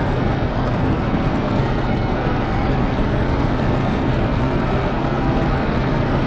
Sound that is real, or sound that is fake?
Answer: fake